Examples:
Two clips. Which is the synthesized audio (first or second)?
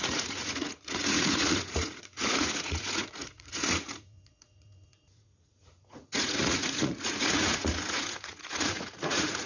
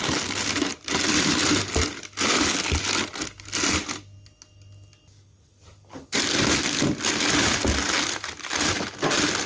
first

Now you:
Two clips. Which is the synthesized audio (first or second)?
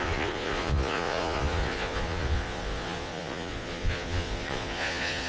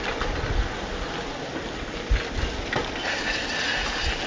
first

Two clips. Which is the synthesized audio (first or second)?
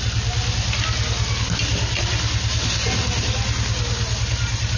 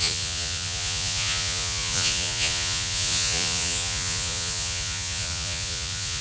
second